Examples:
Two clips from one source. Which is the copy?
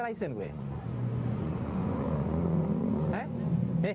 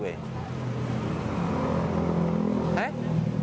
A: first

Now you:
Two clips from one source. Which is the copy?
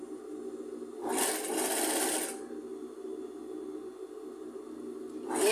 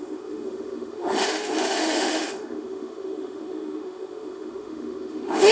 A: second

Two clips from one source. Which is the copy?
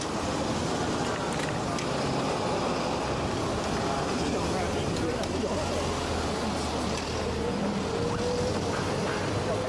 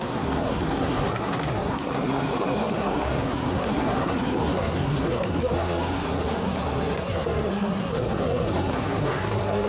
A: second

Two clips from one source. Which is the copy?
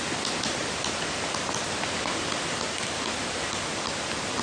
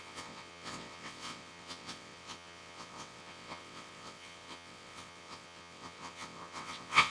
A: second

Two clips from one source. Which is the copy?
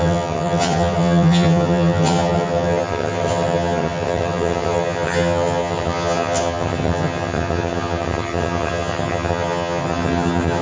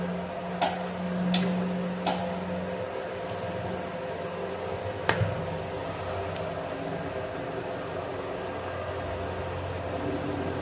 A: first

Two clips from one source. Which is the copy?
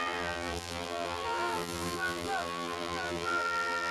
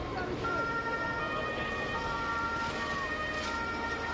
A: first